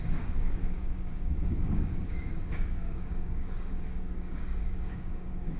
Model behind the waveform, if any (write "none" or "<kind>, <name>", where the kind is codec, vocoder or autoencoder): codec, DAC